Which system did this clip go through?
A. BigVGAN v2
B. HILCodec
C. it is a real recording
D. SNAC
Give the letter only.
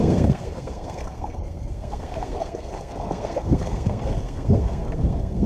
D